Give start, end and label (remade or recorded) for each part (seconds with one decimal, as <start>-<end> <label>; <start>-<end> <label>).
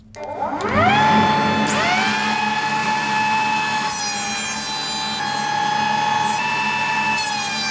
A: 0.0-2.8 recorded; 2.8-4.0 remade; 4.0-7.7 recorded